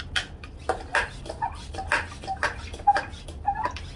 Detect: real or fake real